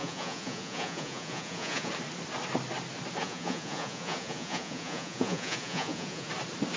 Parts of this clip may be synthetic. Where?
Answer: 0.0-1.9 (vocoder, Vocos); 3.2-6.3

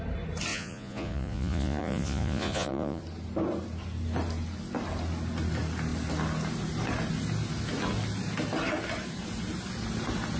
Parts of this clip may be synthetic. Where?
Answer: 0.5-3.0 (vocoder, Vocos)

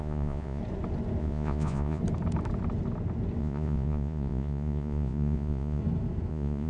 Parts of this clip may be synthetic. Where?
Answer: 0.0-0.6 (vocoder, Vocos); 1.2-2.0; 3.4-5.8; 6.3-6.7

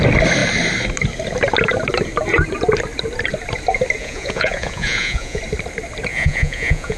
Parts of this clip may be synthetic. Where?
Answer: 4.0-5.4 (vocoder, Vocos); 6.1-7.0